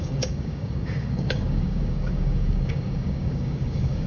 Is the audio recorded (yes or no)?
no